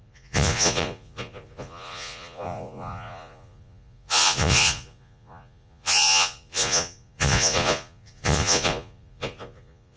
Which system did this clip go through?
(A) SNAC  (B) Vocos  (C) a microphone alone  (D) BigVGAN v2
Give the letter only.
B